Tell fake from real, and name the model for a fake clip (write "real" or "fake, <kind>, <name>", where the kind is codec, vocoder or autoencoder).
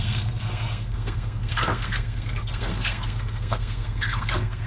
fake, codec, SNAC